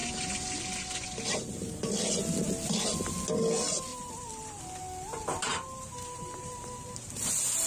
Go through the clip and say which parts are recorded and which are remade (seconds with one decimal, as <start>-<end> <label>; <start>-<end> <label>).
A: 0.0-3.9 recorded; 3.9-4.6 remade; 4.6-5.5 recorded; 5.5-7.3 remade; 7.3-7.7 recorded